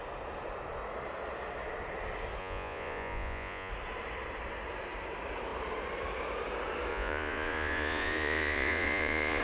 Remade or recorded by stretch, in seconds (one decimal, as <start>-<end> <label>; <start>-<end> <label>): 0.0-2.4 recorded; 2.4-3.7 remade; 3.7-6.9 recorded; 6.9-9.4 remade